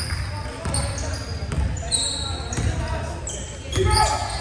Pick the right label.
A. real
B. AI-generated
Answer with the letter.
A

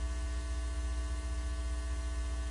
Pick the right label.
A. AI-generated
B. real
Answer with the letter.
B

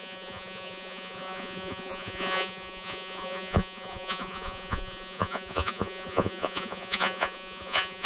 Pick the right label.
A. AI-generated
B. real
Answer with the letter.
A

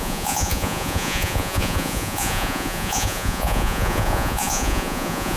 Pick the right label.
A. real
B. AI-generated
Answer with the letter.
B